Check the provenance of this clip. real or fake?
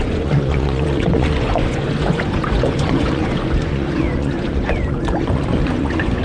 fake